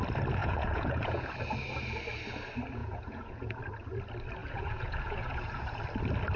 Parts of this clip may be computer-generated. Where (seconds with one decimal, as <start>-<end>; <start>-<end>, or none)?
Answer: 0.4-1.3; 2.8-3.6; 4.4-5.8